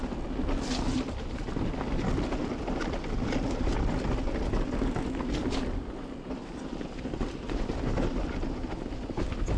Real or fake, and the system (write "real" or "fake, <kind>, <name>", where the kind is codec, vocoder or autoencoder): real